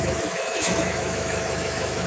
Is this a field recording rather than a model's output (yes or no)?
no